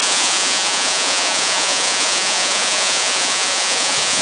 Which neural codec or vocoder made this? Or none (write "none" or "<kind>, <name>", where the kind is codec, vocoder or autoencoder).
vocoder, Vocos